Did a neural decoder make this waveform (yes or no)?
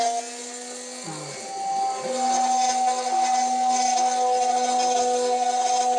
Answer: no